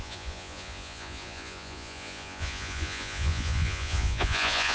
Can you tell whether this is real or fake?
fake